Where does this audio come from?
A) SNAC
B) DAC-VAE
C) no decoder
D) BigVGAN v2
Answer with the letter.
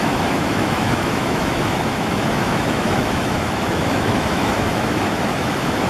B